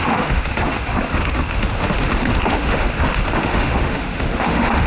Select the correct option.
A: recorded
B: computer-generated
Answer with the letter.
B